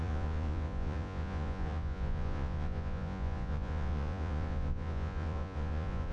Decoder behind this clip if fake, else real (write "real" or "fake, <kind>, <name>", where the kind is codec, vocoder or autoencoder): fake, vocoder, Vocos